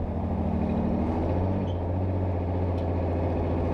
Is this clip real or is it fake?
real